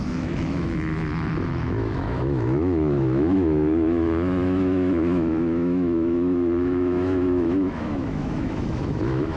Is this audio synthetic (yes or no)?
yes